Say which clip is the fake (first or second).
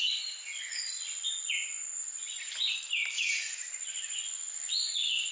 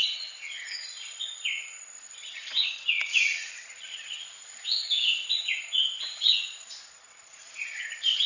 second